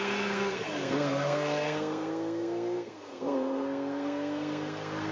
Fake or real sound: fake